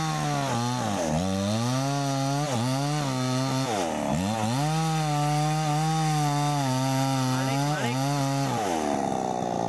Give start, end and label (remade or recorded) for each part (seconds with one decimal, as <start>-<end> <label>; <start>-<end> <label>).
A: 0.0-9.7 recorded